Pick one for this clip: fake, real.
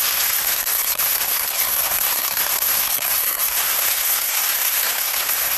fake